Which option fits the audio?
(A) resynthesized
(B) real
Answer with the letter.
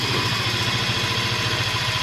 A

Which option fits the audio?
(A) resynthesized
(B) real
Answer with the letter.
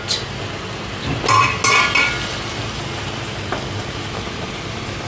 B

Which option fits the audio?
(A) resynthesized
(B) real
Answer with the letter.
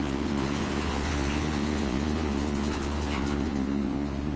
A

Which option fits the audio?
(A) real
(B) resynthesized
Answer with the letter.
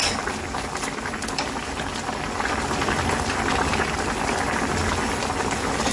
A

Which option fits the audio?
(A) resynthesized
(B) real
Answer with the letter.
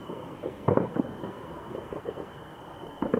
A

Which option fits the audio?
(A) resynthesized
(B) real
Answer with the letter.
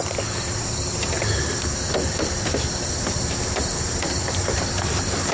B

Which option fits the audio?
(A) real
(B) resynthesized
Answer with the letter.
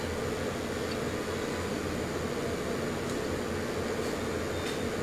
A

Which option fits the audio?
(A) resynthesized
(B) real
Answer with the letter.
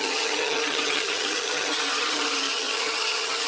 A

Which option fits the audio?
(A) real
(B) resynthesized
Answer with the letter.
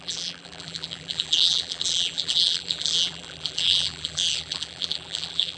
B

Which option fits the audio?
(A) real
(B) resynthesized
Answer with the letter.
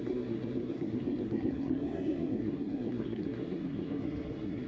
B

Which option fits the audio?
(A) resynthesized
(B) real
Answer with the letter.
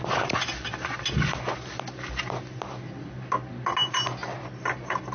B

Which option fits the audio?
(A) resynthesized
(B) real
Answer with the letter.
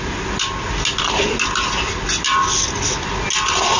B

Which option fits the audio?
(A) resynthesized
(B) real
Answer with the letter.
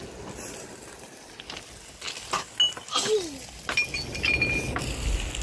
B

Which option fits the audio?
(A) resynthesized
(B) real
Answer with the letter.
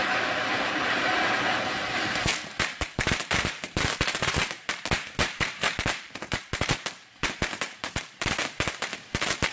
A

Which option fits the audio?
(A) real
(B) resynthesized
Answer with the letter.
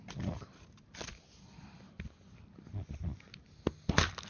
A